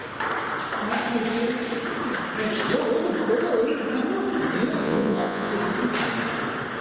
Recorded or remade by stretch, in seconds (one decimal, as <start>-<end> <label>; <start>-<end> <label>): 0.0-4.8 recorded; 4.8-5.5 remade; 5.5-6.8 recorded